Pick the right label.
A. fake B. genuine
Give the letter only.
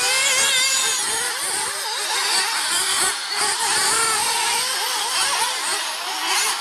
B